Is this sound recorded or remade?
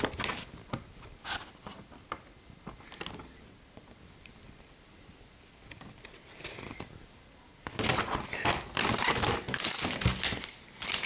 recorded